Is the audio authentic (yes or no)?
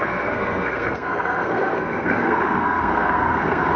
no